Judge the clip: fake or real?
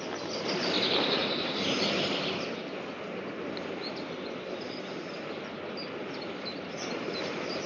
real